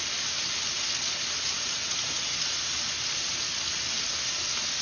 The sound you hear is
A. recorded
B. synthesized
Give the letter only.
A